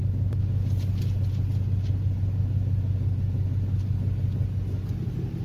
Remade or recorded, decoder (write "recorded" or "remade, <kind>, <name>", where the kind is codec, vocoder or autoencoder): recorded